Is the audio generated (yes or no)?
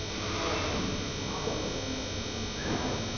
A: no